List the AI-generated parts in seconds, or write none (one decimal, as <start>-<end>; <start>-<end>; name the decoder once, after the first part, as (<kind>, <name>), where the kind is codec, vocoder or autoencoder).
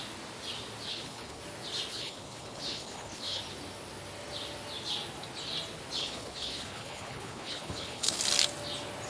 0.9-1.4 (codec, HILCodec); 1.9-3.4; 6.0-8.2